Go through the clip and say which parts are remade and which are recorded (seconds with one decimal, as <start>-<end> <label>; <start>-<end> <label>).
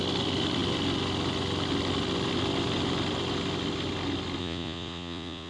0.0-4.4 recorded; 4.4-5.5 remade